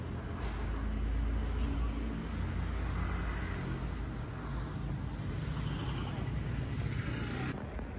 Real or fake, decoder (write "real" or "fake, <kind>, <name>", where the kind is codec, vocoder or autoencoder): real